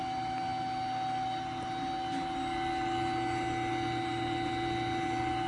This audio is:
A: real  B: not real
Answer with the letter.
A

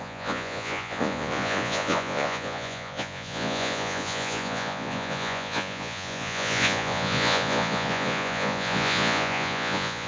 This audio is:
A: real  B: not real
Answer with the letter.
B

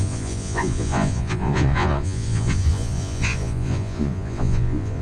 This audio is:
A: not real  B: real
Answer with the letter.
A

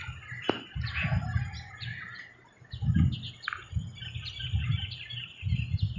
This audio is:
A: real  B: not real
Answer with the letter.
A